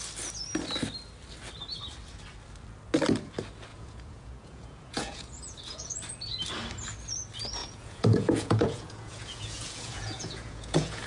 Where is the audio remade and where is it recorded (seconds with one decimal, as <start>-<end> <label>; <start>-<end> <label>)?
0.0-3.7 recorded; 3.7-5.9 remade; 5.9-7.6 recorded; 7.6-11.1 remade